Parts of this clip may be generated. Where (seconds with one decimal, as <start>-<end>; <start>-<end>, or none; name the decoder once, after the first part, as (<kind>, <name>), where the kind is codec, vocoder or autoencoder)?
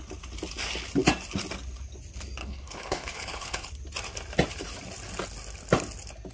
2.4-3.7 (codec, HILCodec)